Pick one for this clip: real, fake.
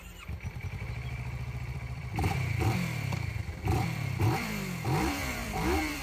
fake